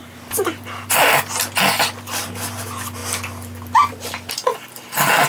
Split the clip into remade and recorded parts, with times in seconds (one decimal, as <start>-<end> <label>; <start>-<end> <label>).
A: 0.0-5.3 recorded